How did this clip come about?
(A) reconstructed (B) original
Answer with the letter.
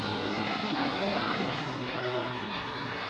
A